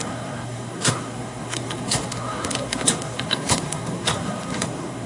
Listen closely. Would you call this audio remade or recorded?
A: remade